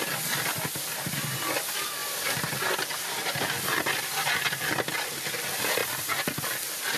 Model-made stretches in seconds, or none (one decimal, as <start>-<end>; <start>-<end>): 2.0-2.8